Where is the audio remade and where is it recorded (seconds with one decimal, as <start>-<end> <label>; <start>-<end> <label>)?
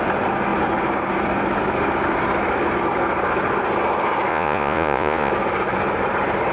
0.0-4.3 recorded; 4.3-5.3 remade; 5.3-6.5 recorded